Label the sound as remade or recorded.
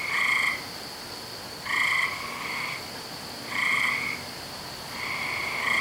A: remade